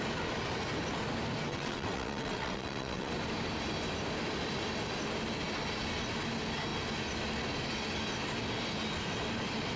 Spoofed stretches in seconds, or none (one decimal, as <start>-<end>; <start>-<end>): 1.5-3.1